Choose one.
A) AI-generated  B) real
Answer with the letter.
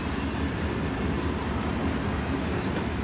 B